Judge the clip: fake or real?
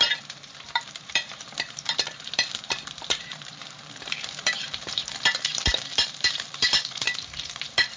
fake